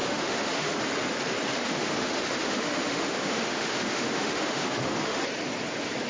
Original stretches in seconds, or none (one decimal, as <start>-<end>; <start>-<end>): 0.8-1.5; 5.2-6.1